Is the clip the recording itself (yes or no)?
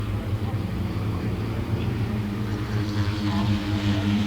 no